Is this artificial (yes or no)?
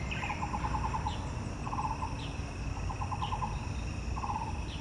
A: no